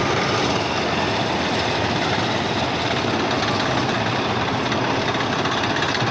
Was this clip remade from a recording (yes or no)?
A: no